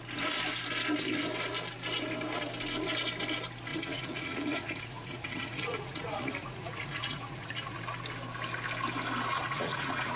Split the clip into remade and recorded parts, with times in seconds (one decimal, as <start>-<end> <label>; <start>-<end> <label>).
0.0-3.7 recorded; 3.7-7.8 remade; 7.8-9.3 recorded; 9.3-10.2 remade